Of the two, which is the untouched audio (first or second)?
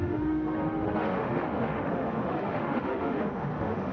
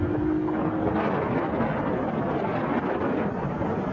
second